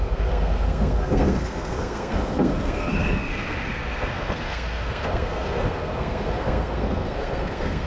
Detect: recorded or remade remade